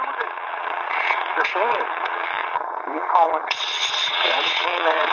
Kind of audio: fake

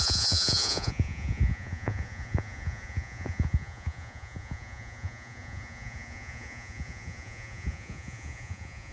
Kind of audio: fake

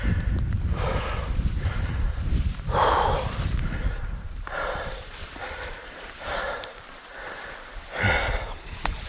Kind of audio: fake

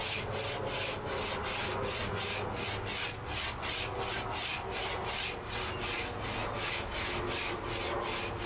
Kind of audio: real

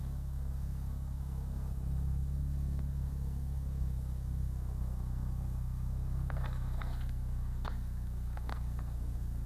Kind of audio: fake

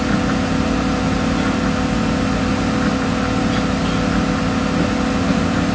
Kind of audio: real